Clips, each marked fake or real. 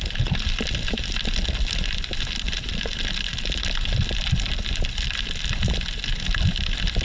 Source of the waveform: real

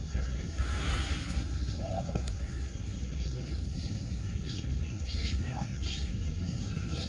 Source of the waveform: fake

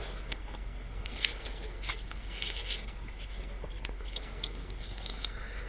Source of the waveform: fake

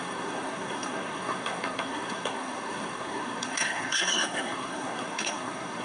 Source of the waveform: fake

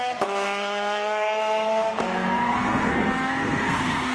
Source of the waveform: fake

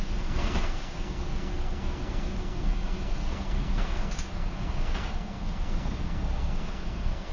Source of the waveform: fake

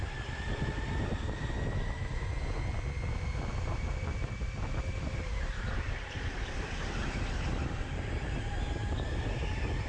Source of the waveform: real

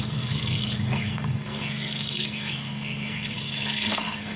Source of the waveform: fake